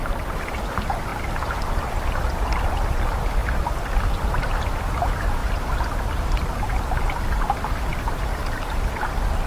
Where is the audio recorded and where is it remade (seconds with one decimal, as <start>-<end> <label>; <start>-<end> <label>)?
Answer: 0.0-9.5 recorded